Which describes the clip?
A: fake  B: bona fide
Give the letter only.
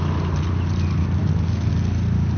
B